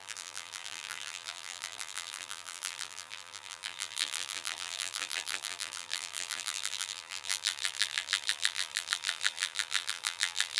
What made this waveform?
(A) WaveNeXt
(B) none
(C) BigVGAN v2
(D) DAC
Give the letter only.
C